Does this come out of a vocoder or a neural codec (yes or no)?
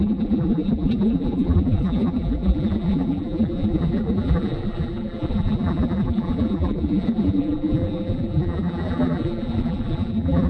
yes